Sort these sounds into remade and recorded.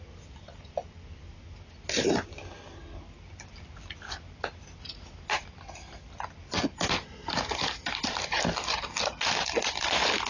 recorded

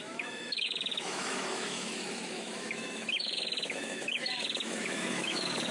remade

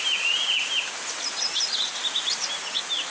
recorded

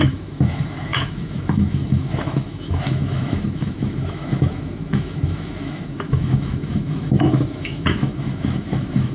remade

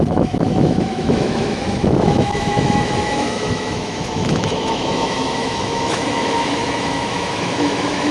remade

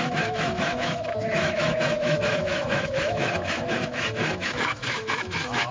remade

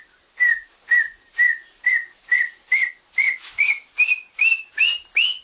recorded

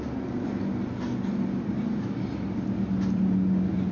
recorded